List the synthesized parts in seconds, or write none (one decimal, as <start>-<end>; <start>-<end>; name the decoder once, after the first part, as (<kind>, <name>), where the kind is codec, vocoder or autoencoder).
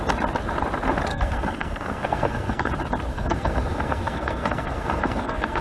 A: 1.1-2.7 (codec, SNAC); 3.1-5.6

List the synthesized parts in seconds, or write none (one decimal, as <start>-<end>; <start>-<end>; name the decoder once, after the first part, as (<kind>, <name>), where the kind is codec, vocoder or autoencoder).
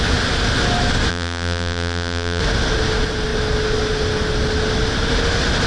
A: 1.1-2.4 (vocoder, BigVGAN v2)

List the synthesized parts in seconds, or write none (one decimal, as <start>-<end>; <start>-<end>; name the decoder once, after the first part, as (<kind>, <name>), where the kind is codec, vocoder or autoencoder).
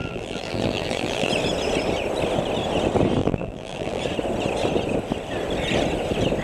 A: 0.0-1.3 (vocoder, BigVGAN v2); 3.2-4.0